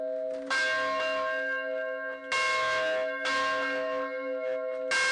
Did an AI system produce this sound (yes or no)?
no